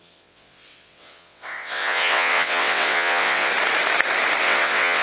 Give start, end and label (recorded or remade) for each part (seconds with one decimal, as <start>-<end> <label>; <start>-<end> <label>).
0.0-3.5 remade; 3.5-4.4 recorded; 4.4-5.0 remade